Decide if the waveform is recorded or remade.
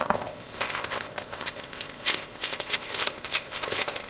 remade